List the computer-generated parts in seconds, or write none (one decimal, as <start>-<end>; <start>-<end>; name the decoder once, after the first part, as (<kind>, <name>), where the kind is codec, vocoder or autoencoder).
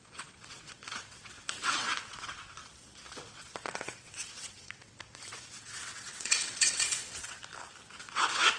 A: 0.0-2.6 (vocoder, WaveNeXt); 3.2-7.4; 8.0-8.6